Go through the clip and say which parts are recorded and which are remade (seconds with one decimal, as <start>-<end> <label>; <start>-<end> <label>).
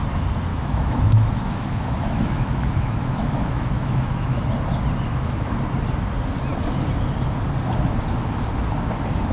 0.0-0.5 recorded; 0.5-4.4 remade; 4.4-5.1 recorded; 5.1-5.6 remade; 5.6-9.3 recorded